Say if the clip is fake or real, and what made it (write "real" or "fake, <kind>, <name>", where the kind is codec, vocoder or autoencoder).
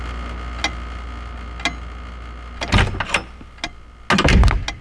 real